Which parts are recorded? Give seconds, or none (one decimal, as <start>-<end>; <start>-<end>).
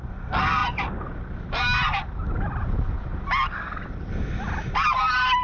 0.0-0.6; 1.6-3.1; 4.9-5.4